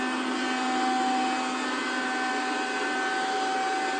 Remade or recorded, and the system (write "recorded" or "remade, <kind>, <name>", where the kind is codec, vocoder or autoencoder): recorded